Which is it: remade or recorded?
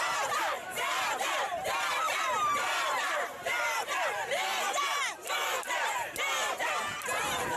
remade